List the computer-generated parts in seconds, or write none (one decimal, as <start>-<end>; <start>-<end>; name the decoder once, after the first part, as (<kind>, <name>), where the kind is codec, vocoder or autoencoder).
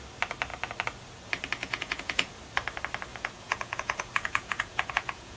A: 1.6-2.3 (vocoder, Vocos); 3.1-5.4